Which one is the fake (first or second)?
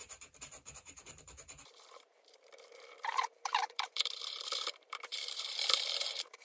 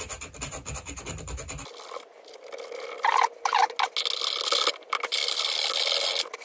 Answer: first